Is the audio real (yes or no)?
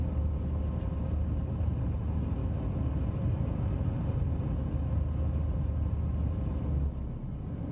yes